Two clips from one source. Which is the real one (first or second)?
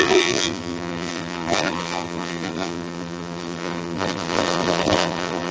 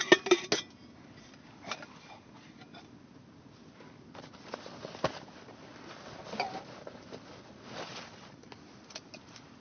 second